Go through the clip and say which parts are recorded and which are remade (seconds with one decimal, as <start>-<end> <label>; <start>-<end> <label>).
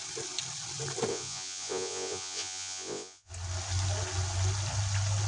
0.0-1.1 recorded; 1.1-3.3 remade; 3.3-5.3 recorded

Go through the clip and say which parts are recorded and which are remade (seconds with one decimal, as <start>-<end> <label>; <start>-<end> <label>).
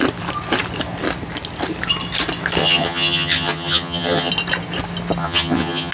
0.0-2.6 recorded; 2.6-4.3 remade; 4.3-5.2 recorded; 5.2-5.9 remade